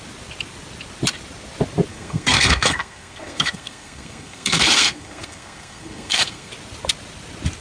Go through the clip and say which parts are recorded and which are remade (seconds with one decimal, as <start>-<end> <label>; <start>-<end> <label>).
0.0-1.9 recorded; 1.9-6.5 remade; 6.5-7.6 recorded